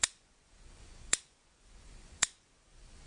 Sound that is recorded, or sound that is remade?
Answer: remade